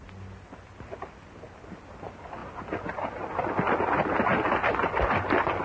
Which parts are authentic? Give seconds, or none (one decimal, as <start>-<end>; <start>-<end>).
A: 0.0-0.7; 1.3-4.3